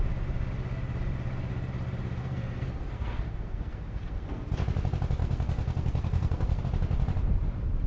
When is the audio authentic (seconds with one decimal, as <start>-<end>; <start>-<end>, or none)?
0.0-2.2; 4.5-5.2; 6.6-7.9